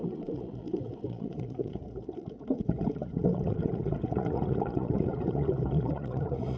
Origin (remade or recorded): remade